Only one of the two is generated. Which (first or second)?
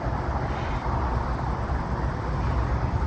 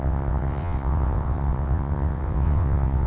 second